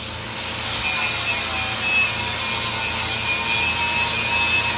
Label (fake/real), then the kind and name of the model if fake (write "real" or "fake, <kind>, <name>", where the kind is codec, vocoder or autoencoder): real